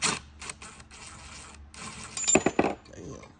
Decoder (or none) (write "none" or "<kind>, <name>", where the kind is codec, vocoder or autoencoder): none